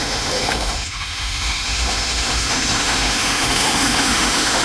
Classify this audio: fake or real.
fake